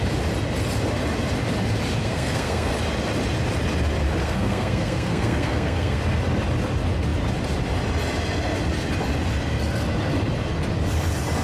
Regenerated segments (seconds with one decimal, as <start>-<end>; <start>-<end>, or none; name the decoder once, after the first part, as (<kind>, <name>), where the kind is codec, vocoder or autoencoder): 2.0-2.7 (codec, SNAC); 4.2-6.0